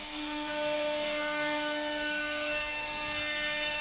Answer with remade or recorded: remade